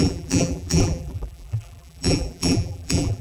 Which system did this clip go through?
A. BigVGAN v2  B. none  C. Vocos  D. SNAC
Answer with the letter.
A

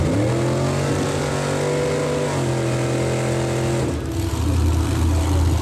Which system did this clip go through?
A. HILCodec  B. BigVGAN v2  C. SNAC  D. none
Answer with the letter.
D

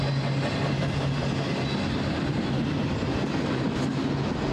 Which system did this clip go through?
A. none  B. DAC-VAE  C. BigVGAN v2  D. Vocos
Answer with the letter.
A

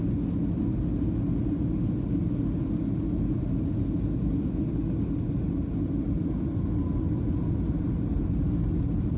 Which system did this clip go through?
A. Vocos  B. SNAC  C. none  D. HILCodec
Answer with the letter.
C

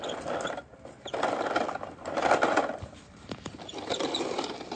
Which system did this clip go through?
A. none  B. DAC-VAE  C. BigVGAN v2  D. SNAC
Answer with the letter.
C